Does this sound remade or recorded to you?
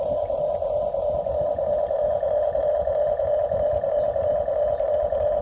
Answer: recorded